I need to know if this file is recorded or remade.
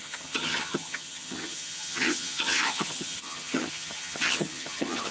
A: remade